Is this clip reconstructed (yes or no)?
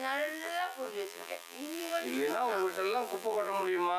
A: yes